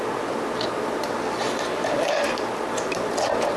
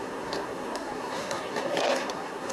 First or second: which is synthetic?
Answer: second